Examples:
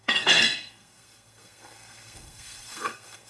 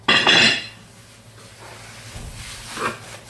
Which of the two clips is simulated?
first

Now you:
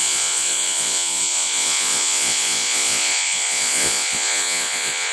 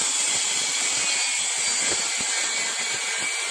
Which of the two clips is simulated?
first